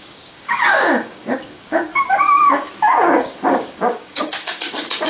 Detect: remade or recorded remade